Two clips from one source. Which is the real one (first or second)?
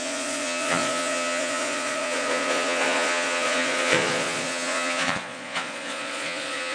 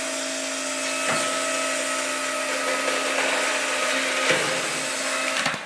second